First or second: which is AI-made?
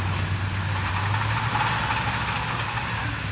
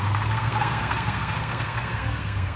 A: second